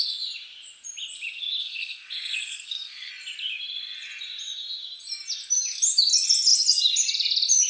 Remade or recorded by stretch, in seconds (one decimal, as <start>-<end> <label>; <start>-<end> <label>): 0.0-1.6 recorded; 1.6-3.1 remade; 3.1-7.7 recorded